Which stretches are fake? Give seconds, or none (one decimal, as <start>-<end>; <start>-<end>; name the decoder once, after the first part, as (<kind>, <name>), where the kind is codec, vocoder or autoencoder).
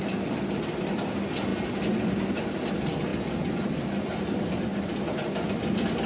none